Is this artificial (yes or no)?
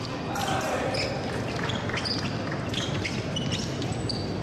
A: no